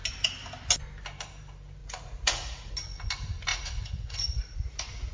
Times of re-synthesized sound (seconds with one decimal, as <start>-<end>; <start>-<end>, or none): 1.8-2.7; 3.5-5.1